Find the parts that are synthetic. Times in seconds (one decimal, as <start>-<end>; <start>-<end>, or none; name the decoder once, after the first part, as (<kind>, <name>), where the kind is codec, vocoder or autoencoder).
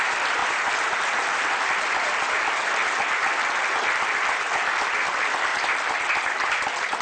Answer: none